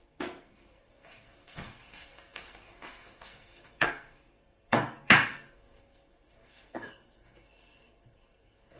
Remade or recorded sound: remade